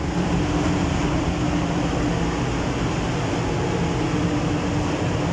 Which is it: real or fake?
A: real